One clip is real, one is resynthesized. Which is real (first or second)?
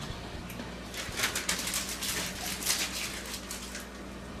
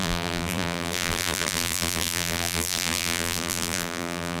first